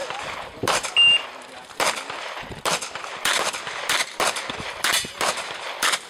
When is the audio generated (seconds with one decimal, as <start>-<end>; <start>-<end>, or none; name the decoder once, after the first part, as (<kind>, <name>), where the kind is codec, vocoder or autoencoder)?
0.0-6.1 (vocoder, BigVGAN v2)